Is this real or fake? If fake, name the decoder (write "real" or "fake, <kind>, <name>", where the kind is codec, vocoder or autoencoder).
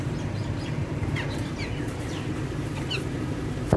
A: fake, vocoder, BigVGAN v2